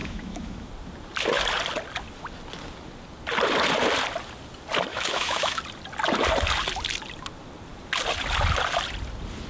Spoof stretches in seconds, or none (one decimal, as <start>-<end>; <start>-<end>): 0.0-0.7; 4.9-5.6